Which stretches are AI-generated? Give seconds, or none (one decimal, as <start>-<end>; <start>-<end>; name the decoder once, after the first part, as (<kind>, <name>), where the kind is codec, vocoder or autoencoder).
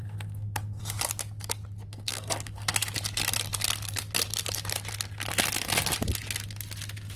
0.0-0.8 (codec, SNAC); 1.9-2.9